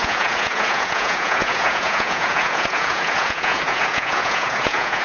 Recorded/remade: remade